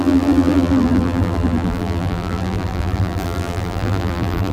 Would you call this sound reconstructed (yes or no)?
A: yes